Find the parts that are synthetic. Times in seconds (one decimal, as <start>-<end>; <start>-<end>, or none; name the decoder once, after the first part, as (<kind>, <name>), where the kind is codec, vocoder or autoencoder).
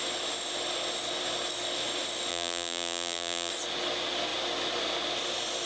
2.3-3.5 (vocoder, BigVGAN v2)